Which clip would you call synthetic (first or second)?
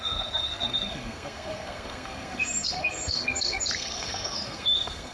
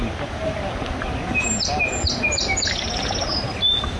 first